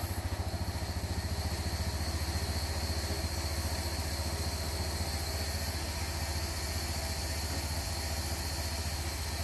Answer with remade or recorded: recorded